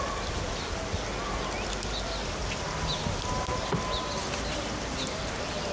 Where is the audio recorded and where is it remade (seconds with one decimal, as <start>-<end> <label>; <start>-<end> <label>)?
0.0-5.7 recorded